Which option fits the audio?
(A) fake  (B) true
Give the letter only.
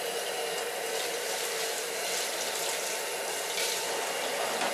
B